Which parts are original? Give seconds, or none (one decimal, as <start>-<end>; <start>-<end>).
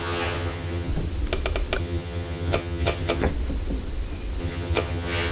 0.9-1.8; 3.3-4.4